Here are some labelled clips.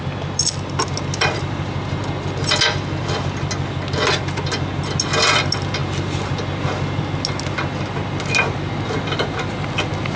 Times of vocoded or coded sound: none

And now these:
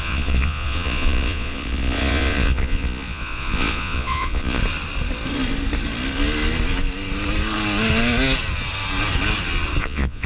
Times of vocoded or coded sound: 0.0-4.6 (vocoder, Vocos); 9.8-10.3

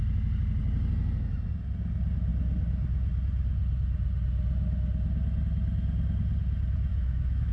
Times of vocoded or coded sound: 6.9-7.5 (autoencoder, DAC-VAE)

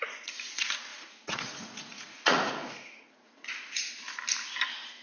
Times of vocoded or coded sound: 0.0-0.5 (vocoder, Vocos); 0.9-3.9

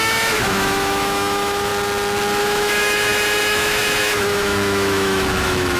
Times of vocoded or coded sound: 0.0-1.7 (autoencoder, DAC-VAE); 2.4-5.8

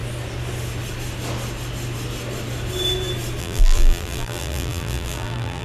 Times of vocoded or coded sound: 3.4-5.6 (vocoder, BigVGAN v2)

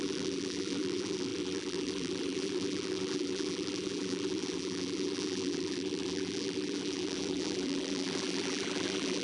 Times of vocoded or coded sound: 0.0-9.2 (vocoder, BigVGAN v2)

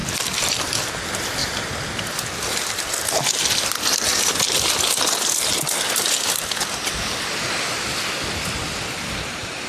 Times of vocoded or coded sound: 0.0-0.6 (vocoder, BigVGAN v2)